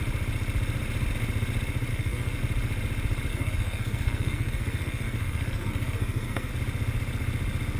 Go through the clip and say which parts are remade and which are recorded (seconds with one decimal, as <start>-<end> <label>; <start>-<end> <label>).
0.0-1.9 recorded; 1.9-2.4 remade; 2.4-3.3 recorded; 3.3-6.5 remade; 6.5-7.8 recorded

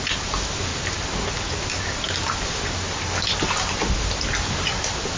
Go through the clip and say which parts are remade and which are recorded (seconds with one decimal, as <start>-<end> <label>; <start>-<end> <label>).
0.0-5.2 recorded

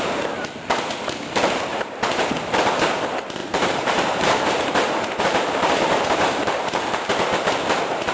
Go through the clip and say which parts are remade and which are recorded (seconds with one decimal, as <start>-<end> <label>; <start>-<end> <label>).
0.0-1.7 recorded; 1.7-2.3 remade; 2.3-3.4 recorded; 3.4-6.3 remade; 6.3-8.1 recorded

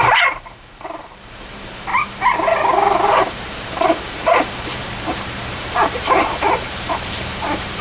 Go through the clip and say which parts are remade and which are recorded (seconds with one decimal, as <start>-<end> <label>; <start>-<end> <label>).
0.0-7.8 remade

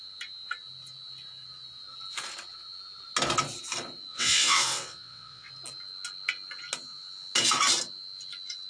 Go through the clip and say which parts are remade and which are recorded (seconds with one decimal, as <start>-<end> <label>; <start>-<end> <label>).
0.0-4.1 recorded; 4.1-5.5 remade; 5.5-8.7 recorded

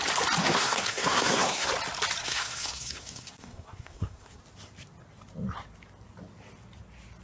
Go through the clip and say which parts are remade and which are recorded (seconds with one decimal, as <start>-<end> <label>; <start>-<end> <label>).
0.0-0.4 recorded; 0.4-1.7 remade; 1.7-2.2 recorded; 2.2-4.4 remade; 4.4-7.2 recorded

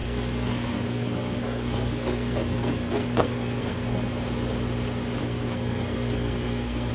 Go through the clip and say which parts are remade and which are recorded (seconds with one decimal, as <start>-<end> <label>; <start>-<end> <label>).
0.0-4.1 remade; 4.1-5.2 recorded; 5.2-6.9 remade

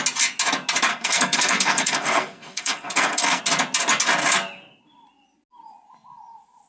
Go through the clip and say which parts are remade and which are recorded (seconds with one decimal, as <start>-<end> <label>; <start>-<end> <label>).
0.0-0.9 recorded; 0.9-3.4 remade; 3.4-6.7 recorded